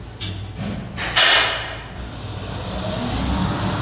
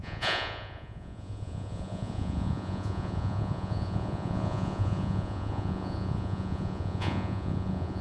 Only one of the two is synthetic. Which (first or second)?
second